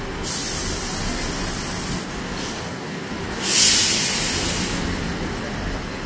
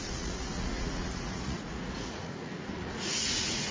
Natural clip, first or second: first